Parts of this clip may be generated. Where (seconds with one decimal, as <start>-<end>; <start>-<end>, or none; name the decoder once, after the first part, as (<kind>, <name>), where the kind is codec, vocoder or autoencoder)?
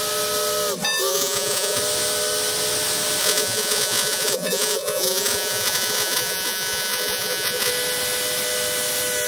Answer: 1.1-1.8 (vocoder, Vocos); 3.2-7.7